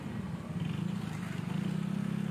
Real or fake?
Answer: real